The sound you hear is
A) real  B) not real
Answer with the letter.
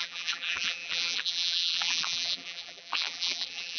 B